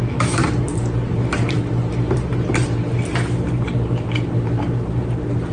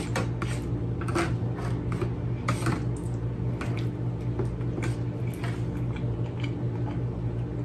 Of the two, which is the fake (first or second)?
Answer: first